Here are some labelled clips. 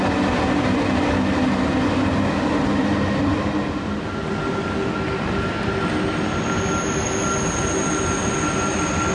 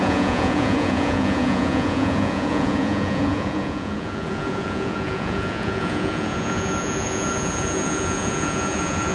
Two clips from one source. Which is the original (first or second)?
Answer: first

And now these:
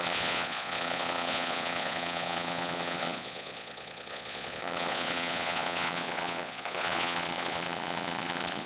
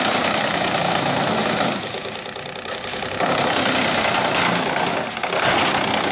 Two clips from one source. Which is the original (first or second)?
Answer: second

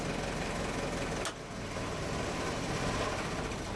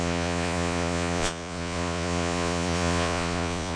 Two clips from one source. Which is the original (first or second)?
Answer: first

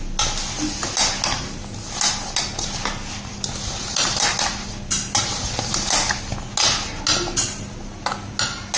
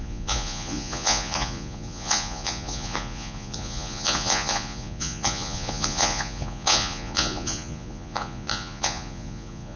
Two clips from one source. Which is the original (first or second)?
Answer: first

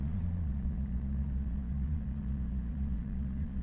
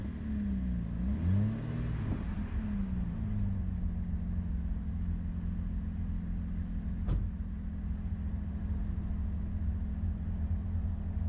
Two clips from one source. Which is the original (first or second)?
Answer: second